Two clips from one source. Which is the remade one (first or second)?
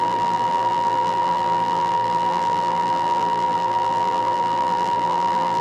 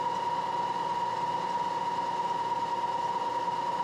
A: first